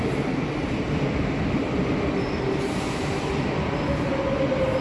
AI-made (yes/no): no